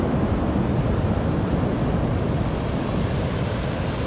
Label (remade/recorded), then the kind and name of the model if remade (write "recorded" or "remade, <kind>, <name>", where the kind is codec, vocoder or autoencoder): recorded